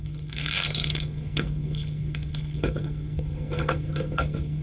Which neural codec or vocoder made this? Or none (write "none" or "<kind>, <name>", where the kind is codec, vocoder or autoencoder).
codec, SNAC